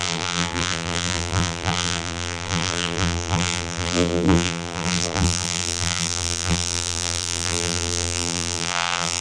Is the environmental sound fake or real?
fake